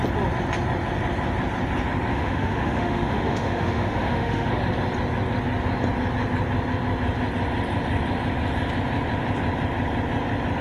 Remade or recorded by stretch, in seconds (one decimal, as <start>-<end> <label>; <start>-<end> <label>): 0.0-2.1 recorded; 2.1-4.5 remade; 4.5-10.6 recorded